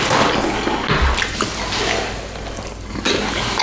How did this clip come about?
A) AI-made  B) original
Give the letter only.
B